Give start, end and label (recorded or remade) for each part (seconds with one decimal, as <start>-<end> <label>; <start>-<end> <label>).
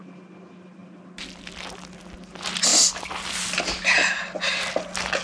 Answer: 0.0-5.2 recorded